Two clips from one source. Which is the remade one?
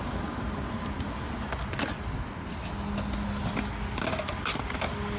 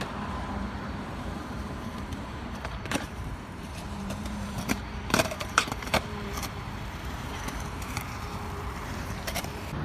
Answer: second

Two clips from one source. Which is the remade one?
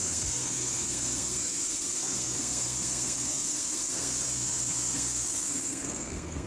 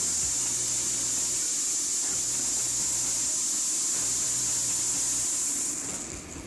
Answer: first